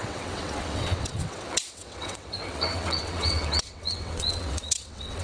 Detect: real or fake fake